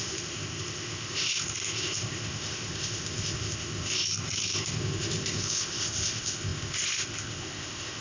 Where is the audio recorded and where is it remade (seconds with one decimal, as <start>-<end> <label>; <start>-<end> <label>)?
0.0-8.0 remade